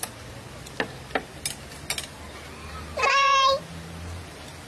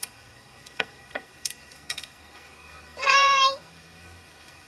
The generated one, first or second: second